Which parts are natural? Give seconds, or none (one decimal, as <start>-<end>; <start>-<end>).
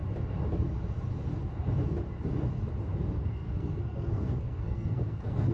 0.0-3.2